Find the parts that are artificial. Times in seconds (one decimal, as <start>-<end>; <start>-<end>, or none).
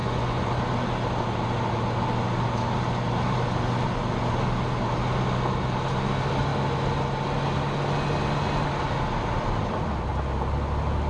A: 0.0-0.5